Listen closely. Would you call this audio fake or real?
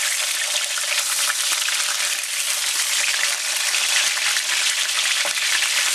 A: real